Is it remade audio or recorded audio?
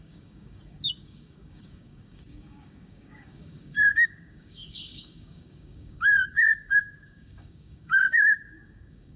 remade